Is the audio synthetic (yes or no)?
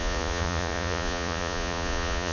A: yes